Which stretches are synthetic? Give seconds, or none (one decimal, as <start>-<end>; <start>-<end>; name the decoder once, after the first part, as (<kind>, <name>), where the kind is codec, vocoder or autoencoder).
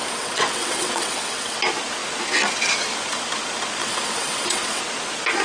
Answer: 0.0-1.6 (vocoder, WaveNeXt); 3.8-4.8